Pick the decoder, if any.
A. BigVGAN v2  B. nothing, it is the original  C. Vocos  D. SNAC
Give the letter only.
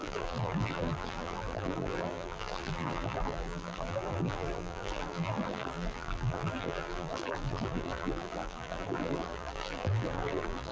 A